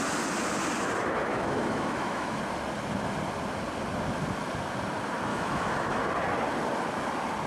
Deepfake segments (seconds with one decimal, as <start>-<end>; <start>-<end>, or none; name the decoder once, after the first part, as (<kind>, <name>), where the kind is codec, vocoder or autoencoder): 1.3-2.4 (autoencoder, DAC-VAE); 5.3-6.0